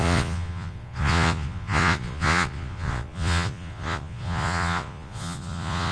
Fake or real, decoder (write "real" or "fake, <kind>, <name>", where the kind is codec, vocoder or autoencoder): fake, vocoder, Vocos